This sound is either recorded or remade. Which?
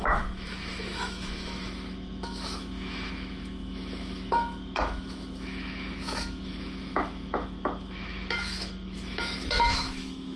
remade